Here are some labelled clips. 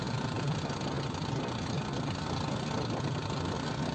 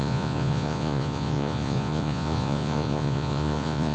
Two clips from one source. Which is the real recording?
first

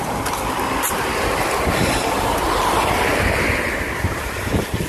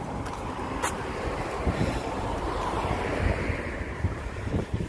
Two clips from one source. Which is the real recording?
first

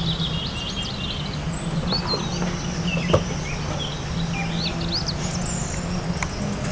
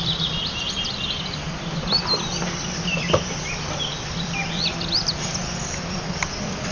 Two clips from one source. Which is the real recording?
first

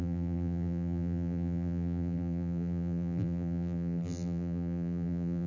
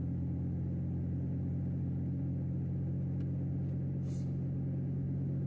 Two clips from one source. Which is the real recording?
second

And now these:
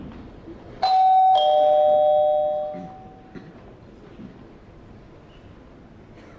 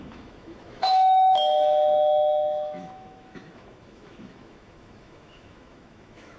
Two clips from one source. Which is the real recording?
first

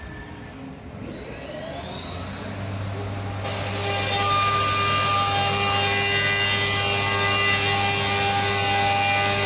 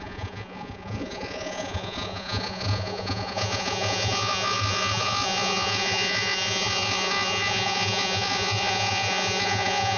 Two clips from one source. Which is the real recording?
first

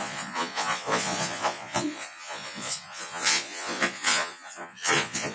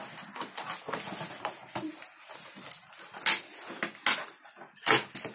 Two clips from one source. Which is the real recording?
second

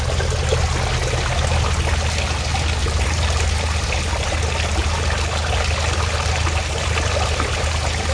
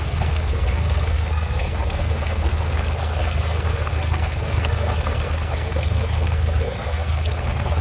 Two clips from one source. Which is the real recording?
first